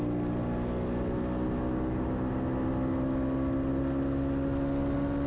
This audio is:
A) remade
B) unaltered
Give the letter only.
B